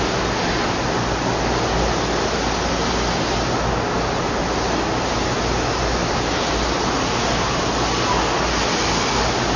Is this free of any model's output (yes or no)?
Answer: yes